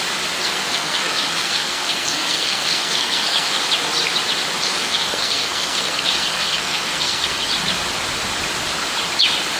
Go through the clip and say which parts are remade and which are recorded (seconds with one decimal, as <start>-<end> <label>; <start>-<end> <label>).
0.0-0.4 recorded; 0.4-3.6 remade; 3.6-4.6 recorded; 4.6-7.5 remade; 7.5-9.6 recorded